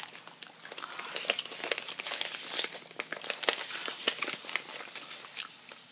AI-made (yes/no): no